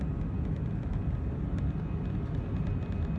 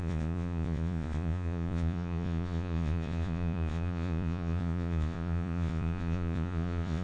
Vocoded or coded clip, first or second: second